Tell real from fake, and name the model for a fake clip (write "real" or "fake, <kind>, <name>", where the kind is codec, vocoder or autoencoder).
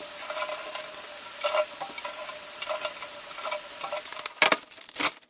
real